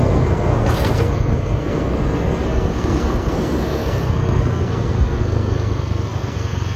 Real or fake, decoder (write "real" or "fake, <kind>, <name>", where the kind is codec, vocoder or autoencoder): fake, codec, SNAC